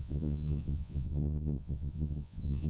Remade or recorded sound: remade